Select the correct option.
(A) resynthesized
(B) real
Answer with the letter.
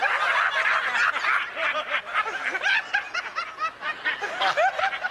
B